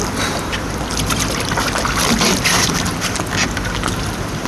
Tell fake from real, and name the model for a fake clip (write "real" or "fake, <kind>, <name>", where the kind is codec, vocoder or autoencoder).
real